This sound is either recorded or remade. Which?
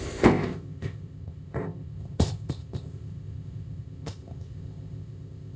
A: remade